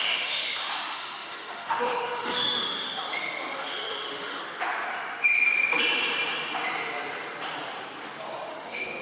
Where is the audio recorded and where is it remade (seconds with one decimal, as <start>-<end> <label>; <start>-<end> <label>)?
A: 0.0-4.4 remade; 4.4-8.5 recorded; 8.5-9.0 remade

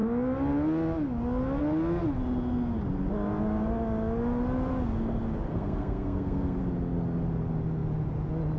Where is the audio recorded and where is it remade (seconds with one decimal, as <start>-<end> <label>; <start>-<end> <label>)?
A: 0.0-5.5 recorded; 5.5-6.6 remade; 6.6-8.6 recorded

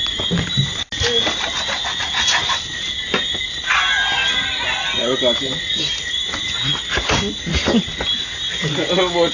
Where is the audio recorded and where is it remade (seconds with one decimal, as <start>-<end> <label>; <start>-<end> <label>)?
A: 0.0-9.3 recorded

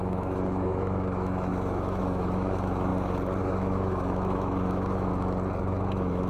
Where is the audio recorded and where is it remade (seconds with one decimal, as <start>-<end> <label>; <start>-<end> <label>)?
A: 0.0-2.9 remade; 2.9-3.4 recorded; 3.4-5.1 remade; 5.1-5.6 recorded; 5.6-6.3 remade